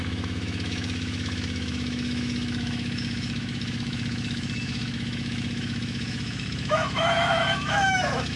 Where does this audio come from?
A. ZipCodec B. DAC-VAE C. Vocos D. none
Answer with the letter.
B